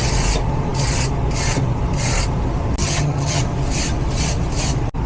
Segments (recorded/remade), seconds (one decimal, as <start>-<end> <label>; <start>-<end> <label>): 0.0-2.8 recorded; 2.8-3.4 remade; 3.4-5.1 recorded